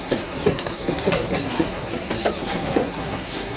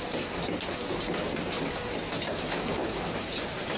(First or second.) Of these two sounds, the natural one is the second